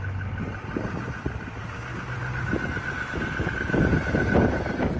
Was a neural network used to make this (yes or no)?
no